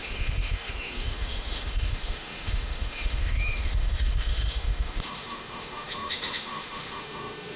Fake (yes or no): yes